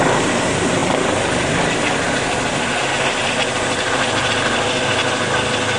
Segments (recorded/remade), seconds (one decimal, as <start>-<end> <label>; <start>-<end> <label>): 0.0-5.8 recorded